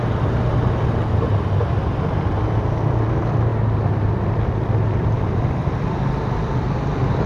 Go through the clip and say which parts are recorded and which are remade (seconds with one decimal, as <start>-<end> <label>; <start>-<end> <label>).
0.0-7.3 remade